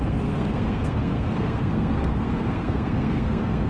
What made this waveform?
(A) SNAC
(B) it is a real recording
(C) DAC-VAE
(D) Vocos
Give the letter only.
A